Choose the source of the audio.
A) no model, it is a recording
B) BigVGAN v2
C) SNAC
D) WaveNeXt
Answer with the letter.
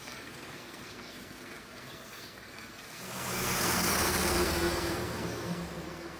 C